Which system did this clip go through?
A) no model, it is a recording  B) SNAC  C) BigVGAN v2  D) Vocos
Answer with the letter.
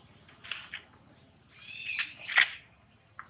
A